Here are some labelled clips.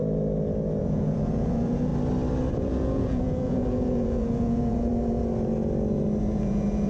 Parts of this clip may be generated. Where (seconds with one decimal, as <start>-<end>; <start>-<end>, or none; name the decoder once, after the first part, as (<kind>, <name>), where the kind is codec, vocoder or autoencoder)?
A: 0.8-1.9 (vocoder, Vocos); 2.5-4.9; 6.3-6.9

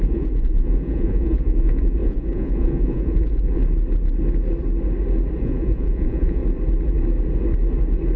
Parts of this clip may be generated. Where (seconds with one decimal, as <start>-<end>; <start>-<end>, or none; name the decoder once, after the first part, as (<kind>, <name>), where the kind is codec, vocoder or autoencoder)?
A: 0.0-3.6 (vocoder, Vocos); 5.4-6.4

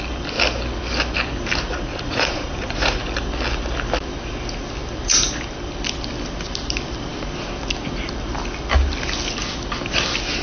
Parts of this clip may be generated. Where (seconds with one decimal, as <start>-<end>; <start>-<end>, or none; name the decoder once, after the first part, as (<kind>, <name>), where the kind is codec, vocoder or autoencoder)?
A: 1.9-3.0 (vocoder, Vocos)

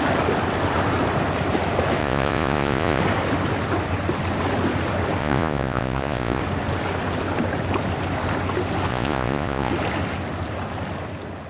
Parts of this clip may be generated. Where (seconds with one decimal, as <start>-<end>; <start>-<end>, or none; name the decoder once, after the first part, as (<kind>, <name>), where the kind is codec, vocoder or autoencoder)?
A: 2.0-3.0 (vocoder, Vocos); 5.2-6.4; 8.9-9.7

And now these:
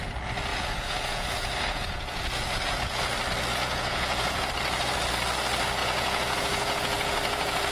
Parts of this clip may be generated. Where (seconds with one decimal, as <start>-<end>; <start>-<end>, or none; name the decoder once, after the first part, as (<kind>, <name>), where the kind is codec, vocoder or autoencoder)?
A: 0.5-3.0 (vocoder, Vocos); 3.5-4.5; 5.8-7.7

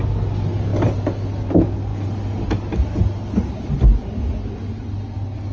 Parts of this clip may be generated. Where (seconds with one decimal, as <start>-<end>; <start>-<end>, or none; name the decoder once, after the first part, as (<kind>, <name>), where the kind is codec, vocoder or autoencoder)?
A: none

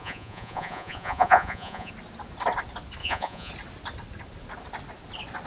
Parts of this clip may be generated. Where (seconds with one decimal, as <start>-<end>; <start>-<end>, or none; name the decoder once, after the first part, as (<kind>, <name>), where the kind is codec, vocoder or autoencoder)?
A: 0.0-1.9 (vocoder, Vocos); 3.0-3.5